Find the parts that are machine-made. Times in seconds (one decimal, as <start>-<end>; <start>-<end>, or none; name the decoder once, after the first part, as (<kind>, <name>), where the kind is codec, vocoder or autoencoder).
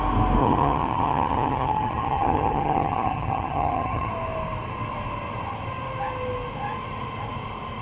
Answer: 0.4-4.1 (vocoder, HiFi-GAN)